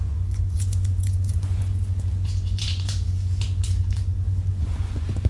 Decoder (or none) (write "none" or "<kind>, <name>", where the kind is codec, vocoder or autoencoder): vocoder, Vocos